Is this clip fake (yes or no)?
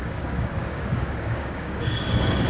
yes